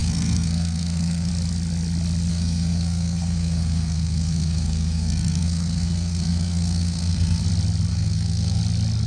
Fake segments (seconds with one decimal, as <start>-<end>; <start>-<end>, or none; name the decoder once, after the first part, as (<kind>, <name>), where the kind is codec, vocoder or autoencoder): 0.0-1.3 (codec, SNAC); 2.3-7.4; 7.9-8.6